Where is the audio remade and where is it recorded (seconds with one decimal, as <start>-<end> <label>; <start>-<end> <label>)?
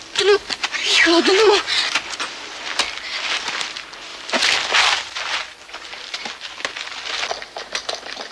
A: 0.0-8.3 recorded